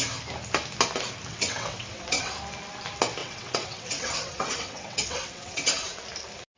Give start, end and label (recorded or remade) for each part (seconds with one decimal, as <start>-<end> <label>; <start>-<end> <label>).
0.0-1.3 recorded; 1.3-2.3 remade; 2.3-3.2 recorded; 3.2-6.0 remade; 6.0-6.6 recorded